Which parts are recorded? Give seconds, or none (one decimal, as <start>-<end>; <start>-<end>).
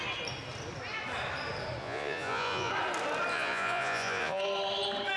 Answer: 0.0-1.8; 2.7-3.3; 4.4-5.2